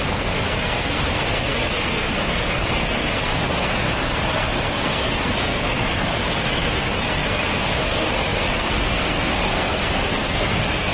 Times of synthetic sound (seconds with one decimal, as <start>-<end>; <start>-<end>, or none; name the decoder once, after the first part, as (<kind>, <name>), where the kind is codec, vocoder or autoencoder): 0.0-10.9 (codec, SNAC)